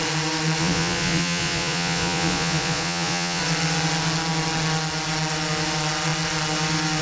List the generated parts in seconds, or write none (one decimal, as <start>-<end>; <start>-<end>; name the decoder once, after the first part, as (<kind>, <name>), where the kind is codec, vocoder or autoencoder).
0.6-3.4 (vocoder, Vocos)